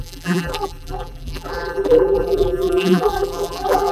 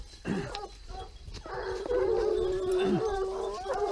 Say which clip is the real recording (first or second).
second